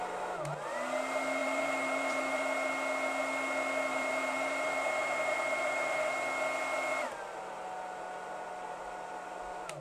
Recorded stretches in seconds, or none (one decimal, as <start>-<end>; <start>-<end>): 0.0-1.4; 2.4-3.9; 6.1-9.8